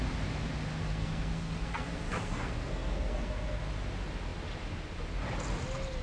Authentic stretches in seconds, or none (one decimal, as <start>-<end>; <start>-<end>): 0.0-0.8; 3.6-6.0